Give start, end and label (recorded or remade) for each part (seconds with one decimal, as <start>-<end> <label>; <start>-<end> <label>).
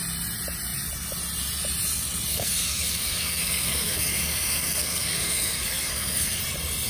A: 0.0-2.3 recorded; 2.3-6.4 remade; 6.4-6.9 recorded